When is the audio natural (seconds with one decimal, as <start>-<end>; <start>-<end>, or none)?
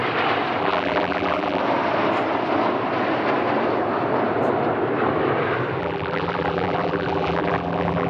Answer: 0.0-0.6; 1.6-5.8